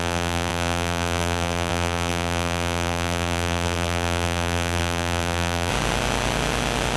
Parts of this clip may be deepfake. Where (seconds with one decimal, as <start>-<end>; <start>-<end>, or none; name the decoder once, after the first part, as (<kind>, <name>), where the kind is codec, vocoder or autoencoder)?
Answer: 0.0-5.7 (vocoder, BigVGAN v2)